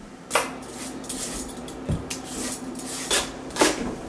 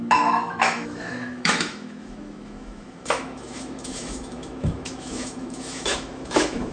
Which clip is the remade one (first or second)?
second